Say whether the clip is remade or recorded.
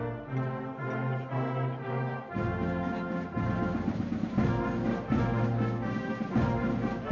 recorded